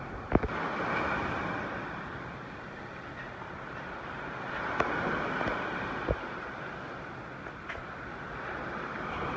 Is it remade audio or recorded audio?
recorded